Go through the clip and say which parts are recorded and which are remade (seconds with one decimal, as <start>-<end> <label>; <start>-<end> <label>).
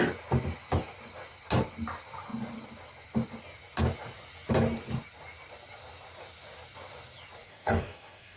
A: 0.0-7.5 recorded; 7.5-8.4 remade